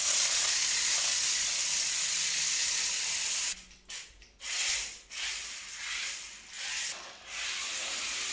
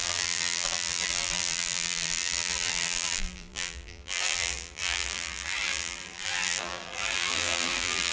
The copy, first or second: second